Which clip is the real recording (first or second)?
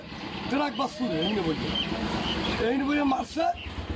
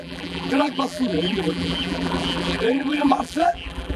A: first